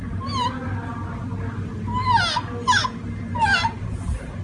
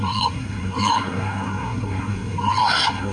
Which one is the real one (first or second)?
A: first